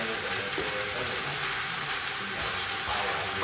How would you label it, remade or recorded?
recorded